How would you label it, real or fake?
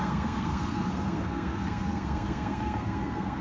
fake